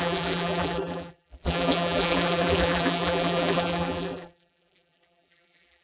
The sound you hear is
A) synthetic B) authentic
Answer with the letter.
A